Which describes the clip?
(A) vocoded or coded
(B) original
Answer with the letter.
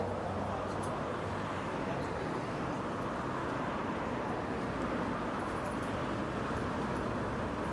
B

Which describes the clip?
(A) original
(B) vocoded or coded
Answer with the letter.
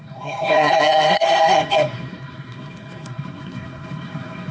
B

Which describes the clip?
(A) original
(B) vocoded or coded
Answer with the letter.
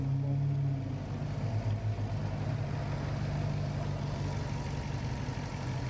A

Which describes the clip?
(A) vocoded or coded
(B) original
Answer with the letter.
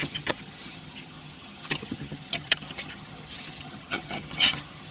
A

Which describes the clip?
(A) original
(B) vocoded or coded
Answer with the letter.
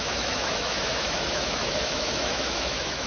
B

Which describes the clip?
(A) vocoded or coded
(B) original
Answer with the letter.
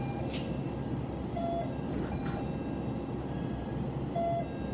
B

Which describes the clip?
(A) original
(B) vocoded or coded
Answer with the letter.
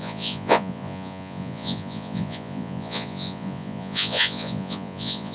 B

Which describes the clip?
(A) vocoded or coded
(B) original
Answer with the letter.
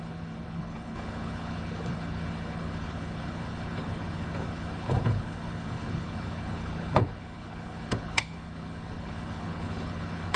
A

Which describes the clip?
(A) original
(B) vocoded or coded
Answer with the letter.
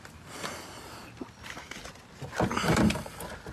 A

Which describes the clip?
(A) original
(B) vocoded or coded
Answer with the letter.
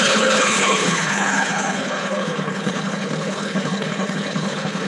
B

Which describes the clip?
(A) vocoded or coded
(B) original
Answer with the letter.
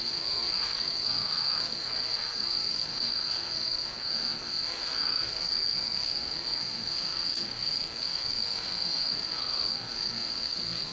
A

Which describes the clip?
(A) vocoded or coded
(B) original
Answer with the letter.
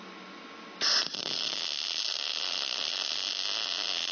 B